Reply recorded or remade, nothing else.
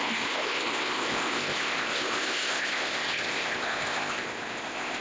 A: remade